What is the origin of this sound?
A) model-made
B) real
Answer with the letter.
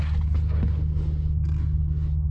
B